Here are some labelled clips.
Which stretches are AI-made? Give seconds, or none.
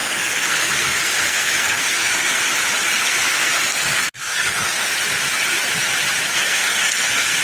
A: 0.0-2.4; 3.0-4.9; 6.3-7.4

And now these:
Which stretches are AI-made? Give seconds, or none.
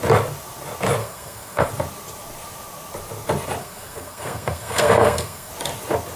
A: 1.0-1.7; 3.6-5.5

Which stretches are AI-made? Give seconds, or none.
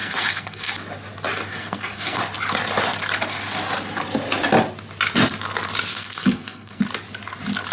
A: 0.0-0.7; 1.5-2.2; 5.9-6.8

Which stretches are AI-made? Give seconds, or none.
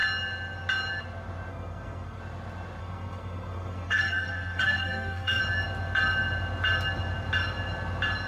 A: 1.5-2.2; 2.8-5.4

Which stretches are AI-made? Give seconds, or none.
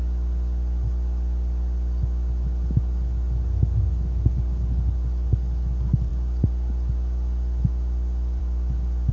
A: none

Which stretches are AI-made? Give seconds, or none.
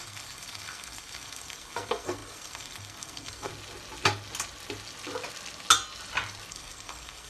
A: 0.0-3.5; 6.5-7.3